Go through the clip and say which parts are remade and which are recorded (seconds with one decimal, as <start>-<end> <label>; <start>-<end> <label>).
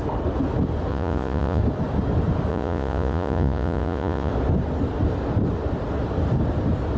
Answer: 0.0-0.9 recorded; 0.9-1.6 remade; 1.6-2.5 recorded; 2.5-4.3 remade; 4.3-7.0 recorded